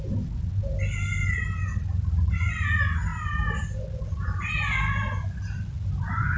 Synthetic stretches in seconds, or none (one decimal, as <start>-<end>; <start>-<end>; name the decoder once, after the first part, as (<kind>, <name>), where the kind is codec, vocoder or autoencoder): none